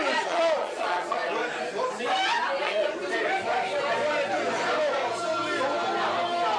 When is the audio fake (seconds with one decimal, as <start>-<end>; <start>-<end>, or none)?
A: 0.0-1.2; 2.6-3.0